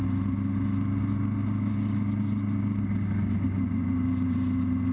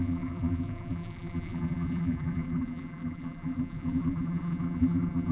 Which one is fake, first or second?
second